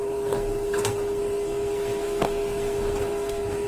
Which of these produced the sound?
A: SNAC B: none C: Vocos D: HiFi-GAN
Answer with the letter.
A